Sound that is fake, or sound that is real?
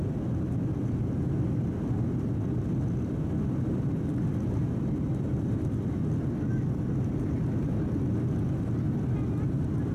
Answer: real